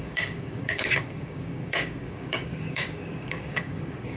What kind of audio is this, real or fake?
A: fake